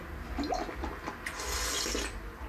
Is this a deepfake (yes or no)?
no